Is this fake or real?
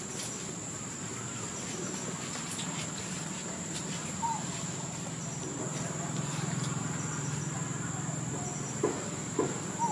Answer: fake